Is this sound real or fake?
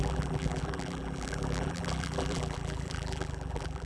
fake